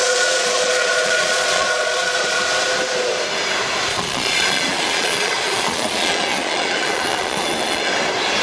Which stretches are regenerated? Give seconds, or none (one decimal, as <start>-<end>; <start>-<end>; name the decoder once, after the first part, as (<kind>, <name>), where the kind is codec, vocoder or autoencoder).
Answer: 0.0-2.4 (vocoder, Vocos); 3.9-7.9